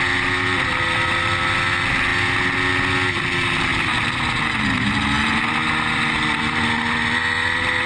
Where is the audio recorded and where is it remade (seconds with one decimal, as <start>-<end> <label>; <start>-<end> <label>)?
0.0-7.9 recorded